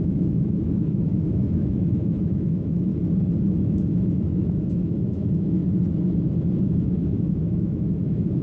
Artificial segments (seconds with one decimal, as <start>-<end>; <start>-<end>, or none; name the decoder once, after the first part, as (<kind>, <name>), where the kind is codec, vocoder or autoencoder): 0.0-2.9 (autoencoder, DAC-VAE); 3.5-5.6; 6.6-8.4